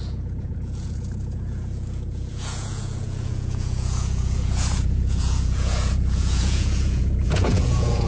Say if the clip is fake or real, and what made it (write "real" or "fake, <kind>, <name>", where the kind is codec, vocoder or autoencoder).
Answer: fake, vocoder, Vocos